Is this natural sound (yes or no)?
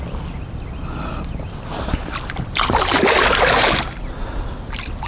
yes